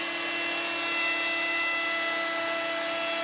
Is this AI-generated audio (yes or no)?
no